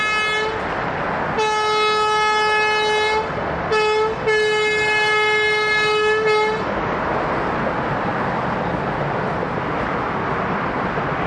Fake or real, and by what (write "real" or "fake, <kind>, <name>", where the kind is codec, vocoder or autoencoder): real